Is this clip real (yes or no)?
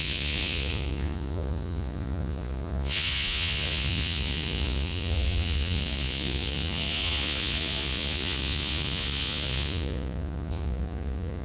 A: no